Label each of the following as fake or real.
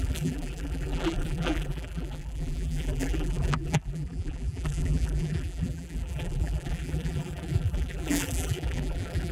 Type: fake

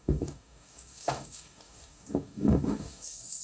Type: fake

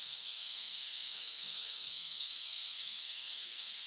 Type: fake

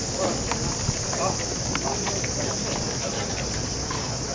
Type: real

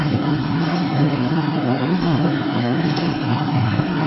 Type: fake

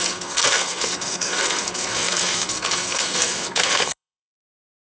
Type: fake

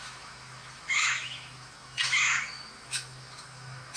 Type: fake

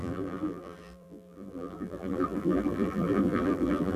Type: fake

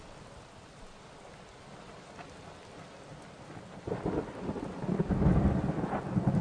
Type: real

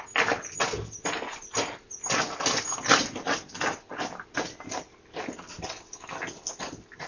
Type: real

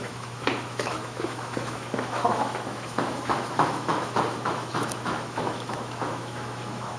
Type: fake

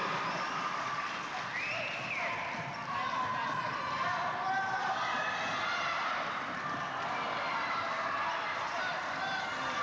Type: real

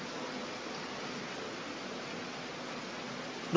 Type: real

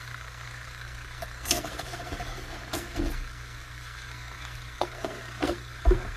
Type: fake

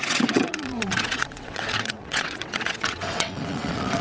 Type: fake